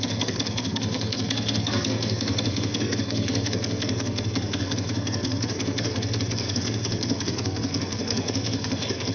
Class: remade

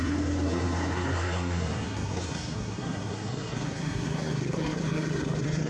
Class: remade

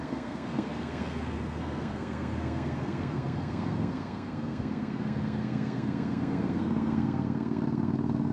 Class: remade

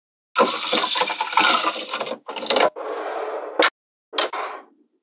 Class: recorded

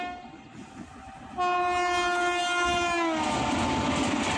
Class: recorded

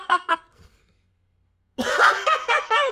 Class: remade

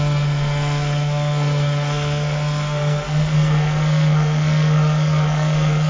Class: remade